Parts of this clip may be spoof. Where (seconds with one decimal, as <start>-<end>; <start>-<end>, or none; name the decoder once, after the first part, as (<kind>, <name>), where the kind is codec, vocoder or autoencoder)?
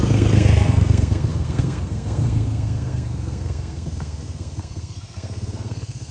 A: 0.0-6.1 (codec, SNAC)